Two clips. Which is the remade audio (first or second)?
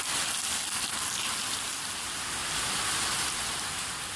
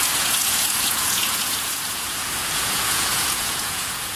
second